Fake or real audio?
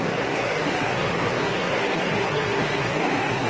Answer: fake